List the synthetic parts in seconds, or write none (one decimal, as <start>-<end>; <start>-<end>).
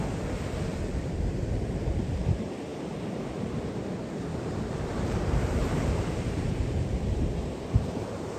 0.7-2.0; 4.3-8.4